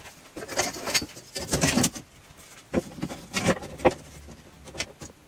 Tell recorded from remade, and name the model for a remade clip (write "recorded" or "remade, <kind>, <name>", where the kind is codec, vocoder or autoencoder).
recorded